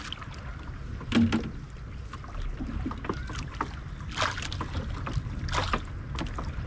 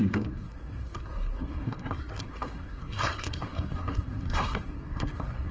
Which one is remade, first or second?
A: second